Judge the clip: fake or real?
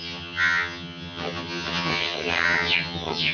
fake